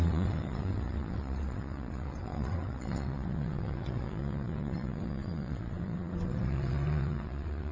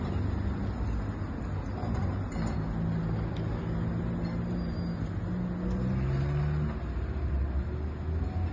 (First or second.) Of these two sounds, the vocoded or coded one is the first